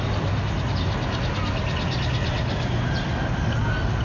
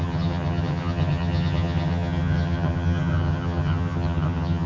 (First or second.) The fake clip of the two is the second